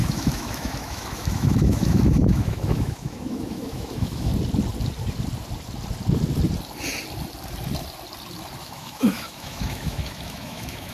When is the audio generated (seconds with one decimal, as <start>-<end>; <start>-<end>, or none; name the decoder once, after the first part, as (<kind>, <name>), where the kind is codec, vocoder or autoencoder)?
0.0-4.3 (autoencoder, DAC-VAE); 8.6-10.9